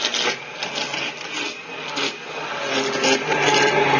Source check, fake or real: real